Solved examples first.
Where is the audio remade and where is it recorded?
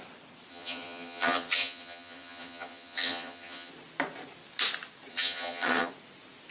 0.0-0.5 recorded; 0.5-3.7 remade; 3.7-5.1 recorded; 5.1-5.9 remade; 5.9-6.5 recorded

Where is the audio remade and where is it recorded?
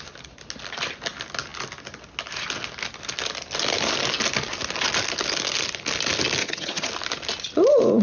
0.0-6.4 recorded; 6.4-6.9 remade; 6.9-8.0 recorded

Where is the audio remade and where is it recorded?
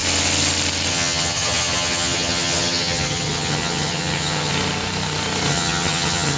0.0-0.9 recorded; 0.9-4.5 remade; 4.5-5.5 recorded; 5.5-6.4 remade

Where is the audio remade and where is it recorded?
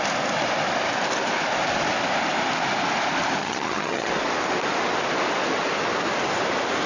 0.0-3.4 recorded; 3.4-4.1 remade; 4.1-6.9 recorded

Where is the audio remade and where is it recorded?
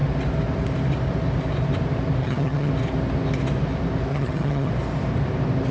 0.0-2.2 recorded; 2.2-2.7 remade; 2.7-4.1 recorded; 4.1-4.7 remade; 4.7-5.7 recorded